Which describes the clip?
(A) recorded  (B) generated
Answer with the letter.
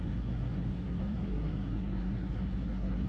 B